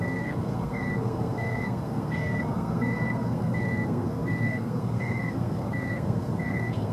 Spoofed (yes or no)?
yes